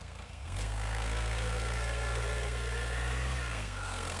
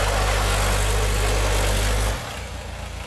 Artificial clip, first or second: first